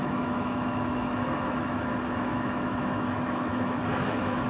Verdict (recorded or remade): remade